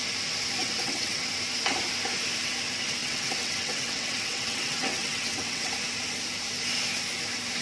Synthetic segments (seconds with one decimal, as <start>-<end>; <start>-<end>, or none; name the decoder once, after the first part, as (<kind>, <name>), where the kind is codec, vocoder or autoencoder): 0.6-1.3 (vocoder, WaveNeXt); 3.0-5.7